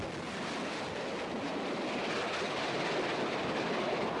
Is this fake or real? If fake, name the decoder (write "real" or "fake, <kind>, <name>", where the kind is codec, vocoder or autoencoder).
real